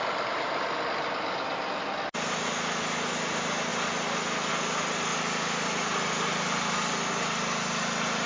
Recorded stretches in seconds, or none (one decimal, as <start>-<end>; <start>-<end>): 0.0-8.3